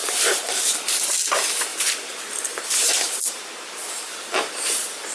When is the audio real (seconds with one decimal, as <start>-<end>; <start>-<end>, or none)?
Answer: 1.0-1.7